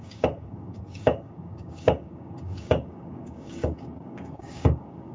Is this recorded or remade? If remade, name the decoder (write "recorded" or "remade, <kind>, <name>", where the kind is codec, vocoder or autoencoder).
remade, codec, DAC